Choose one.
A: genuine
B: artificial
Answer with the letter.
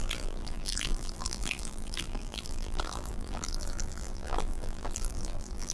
B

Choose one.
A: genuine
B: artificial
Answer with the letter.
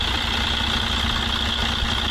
A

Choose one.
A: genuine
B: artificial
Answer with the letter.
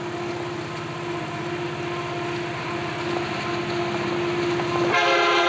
A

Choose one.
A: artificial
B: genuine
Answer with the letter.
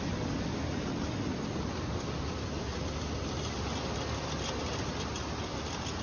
A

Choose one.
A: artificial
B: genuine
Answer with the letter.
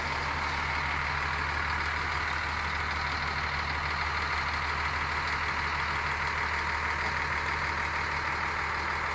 B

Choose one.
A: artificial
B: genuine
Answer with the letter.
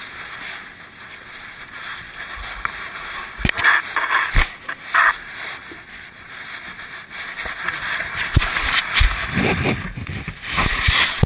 B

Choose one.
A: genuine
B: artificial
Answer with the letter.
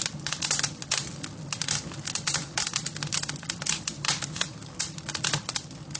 A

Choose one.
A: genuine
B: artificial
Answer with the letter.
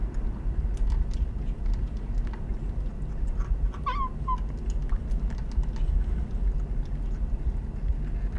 A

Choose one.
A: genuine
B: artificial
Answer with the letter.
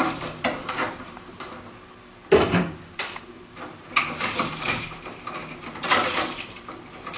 B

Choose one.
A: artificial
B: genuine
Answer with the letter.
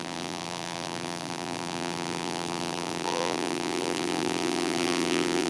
A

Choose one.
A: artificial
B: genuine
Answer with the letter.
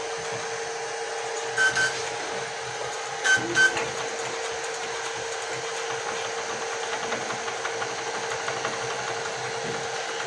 B